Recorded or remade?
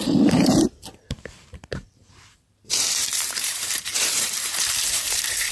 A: remade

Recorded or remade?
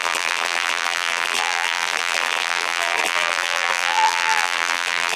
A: remade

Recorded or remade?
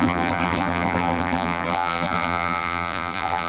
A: remade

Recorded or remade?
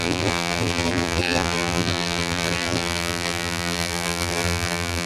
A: remade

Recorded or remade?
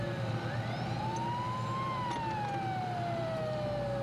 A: recorded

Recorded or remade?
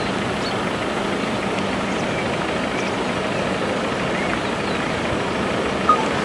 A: recorded